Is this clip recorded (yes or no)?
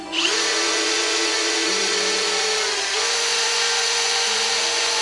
no